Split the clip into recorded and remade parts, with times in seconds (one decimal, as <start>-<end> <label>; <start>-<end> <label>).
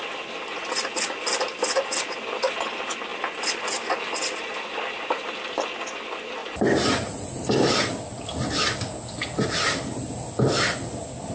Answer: 0.0-11.3 recorded